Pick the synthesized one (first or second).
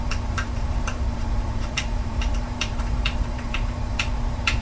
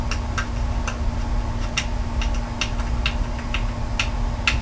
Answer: first